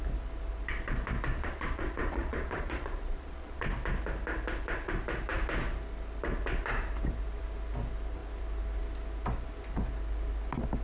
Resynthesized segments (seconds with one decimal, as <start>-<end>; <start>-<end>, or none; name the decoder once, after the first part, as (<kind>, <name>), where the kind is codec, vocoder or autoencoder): 1.3-3.7 (vocoder, Vocos)